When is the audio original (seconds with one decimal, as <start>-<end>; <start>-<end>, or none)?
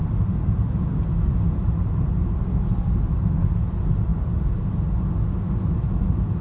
0.0-6.4